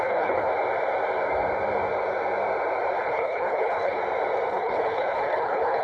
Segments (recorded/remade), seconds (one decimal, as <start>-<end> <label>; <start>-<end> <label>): 0.0-0.5 remade; 0.5-3.0 recorded; 3.0-4.0 remade; 4.0-4.5 recorded; 4.5-5.8 remade